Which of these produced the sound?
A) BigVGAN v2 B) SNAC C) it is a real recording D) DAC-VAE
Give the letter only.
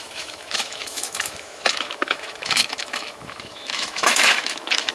D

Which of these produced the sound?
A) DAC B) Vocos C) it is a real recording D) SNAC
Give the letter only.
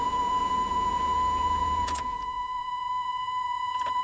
B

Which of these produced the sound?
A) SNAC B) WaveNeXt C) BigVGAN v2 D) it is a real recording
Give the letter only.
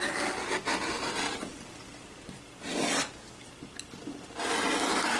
D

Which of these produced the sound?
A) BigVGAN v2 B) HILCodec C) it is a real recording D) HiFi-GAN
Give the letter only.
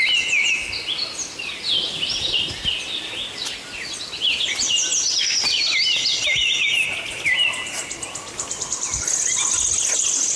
C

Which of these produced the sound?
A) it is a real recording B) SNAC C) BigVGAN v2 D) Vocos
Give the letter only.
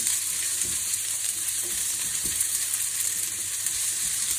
C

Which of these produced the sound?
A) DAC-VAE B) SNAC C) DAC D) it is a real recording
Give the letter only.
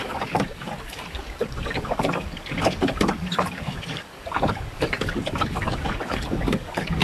C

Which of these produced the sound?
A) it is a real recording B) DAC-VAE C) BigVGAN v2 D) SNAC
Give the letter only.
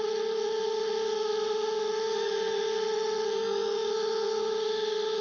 B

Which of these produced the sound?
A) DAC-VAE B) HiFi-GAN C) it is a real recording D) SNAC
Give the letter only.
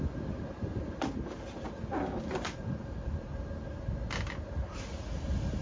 C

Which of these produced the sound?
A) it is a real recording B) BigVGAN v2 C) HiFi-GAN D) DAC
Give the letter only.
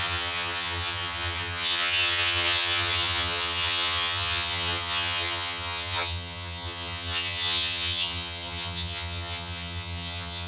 C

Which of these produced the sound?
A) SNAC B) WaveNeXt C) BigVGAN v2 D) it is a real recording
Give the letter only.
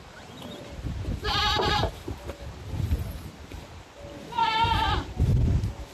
D